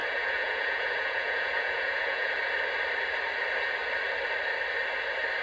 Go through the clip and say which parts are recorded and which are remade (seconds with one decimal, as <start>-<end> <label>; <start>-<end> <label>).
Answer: 0.0-2.3 remade; 2.3-5.4 recorded